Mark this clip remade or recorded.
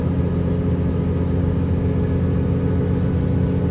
recorded